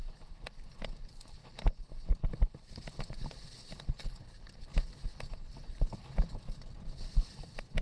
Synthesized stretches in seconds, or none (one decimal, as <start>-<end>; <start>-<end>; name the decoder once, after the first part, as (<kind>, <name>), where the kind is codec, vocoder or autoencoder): none